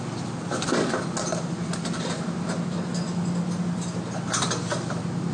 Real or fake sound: real